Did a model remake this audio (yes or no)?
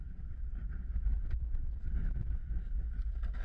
no